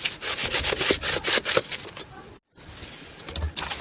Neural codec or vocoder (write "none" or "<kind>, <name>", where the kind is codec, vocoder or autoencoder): none